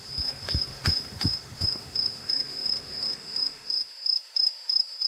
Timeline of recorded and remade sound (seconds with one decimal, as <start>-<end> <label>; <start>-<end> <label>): 0.0-5.1 remade